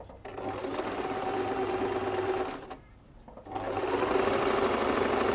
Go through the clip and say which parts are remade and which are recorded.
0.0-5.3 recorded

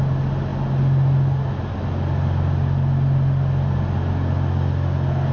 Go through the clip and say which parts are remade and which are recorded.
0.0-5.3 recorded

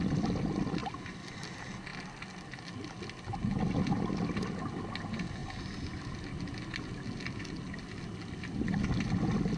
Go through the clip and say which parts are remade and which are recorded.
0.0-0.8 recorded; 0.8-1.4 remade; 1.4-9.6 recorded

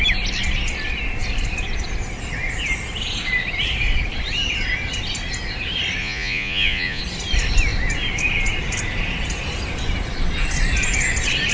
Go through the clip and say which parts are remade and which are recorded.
0.0-6.0 recorded; 6.0-7.0 remade; 7.0-11.5 recorded

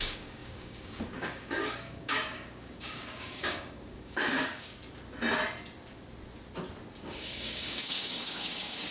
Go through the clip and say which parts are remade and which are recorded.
0.0-4.8 remade; 4.8-6.9 recorded; 6.9-8.9 remade

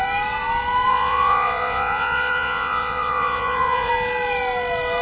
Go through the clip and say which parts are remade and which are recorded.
0.0-0.9 recorded; 0.9-3.9 remade; 3.9-5.0 recorded

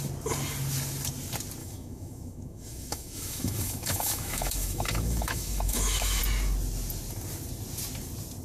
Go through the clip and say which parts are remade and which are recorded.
0.0-1.6 recorded; 1.6-6.2 remade; 6.2-8.4 recorded